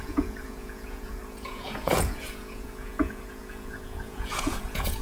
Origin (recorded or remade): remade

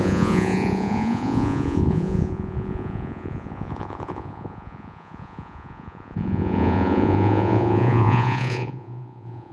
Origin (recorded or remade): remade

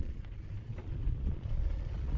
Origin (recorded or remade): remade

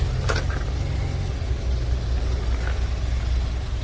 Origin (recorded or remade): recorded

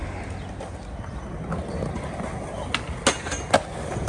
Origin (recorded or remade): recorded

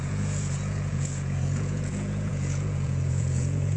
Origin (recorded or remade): remade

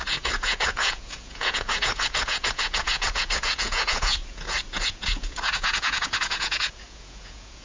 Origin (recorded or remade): remade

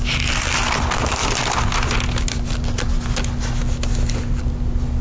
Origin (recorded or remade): recorded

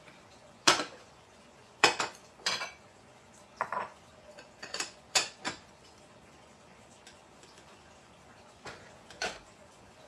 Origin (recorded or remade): remade